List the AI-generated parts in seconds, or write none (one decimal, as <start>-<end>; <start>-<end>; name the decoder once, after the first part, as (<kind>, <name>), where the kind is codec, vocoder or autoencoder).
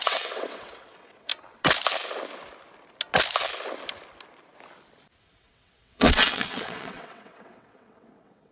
0.0-1.3 (vocoder, WaveNeXt); 5.2-8.5